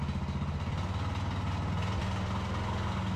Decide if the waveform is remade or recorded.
recorded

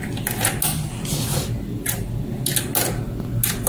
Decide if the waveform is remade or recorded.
recorded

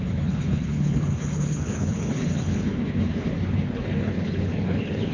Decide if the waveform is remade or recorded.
remade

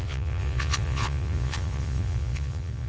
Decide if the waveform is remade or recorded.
remade